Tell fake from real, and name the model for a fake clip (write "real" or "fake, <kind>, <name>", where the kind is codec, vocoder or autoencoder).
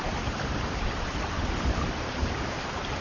fake, vocoder, BigVGAN v2